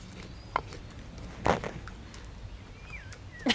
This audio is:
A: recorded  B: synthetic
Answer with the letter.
A